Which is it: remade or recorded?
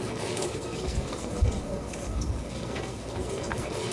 remade